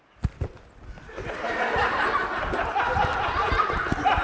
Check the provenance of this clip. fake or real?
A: real